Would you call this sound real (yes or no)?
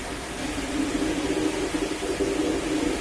yes